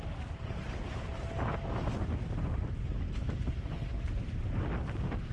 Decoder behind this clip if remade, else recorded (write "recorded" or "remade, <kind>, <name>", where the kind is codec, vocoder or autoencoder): recorded